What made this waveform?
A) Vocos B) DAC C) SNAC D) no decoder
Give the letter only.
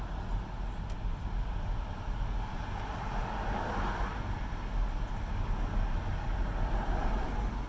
D